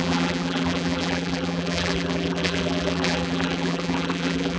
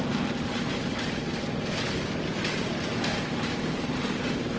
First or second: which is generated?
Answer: first